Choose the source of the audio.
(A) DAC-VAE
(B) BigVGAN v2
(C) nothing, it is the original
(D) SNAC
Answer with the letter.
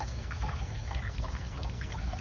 D